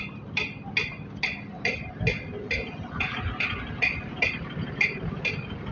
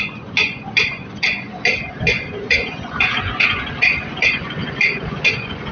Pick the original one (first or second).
first